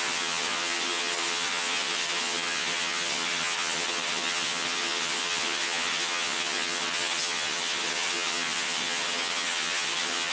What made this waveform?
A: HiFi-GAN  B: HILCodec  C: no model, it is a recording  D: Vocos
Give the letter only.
A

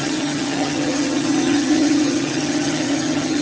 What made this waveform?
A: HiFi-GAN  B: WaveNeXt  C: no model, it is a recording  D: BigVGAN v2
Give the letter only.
A